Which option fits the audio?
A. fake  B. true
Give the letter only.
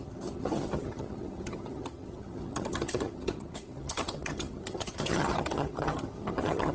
A